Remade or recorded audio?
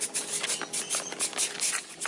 remade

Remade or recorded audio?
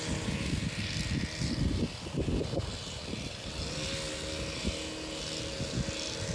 recorded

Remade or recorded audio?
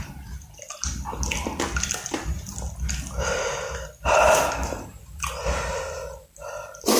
recorded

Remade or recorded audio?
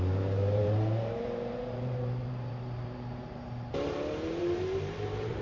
remade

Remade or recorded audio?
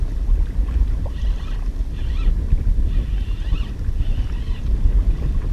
recorded